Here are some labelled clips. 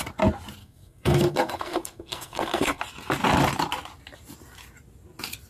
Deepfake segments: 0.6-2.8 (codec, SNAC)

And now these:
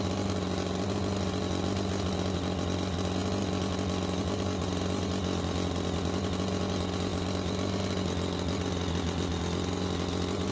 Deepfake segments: none

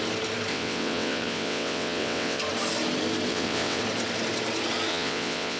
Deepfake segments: 0.5-2.4 (vocoder, WaveNeXt); 3.3-3.8; 4.9-5.6

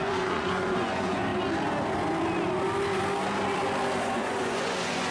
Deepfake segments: 0.0-1.3 (vocoder, Vocos); 4.0-5.1

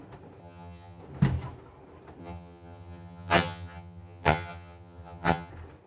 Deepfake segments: 0.4-1.0 (vocoder, HiFi-GAN); 2.2-5.5

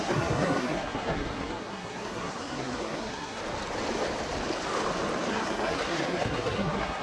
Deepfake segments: 0.0-3.4 (codec, SNAC); 5.3-7.0

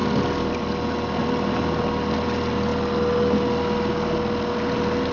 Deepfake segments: 0.0-0.7 (vocoder, BigVGAN v2)

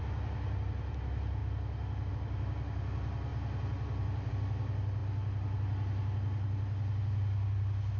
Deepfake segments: none